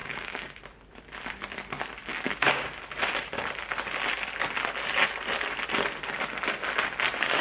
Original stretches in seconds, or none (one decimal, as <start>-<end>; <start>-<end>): 0.6-2.1; 2.8-7.4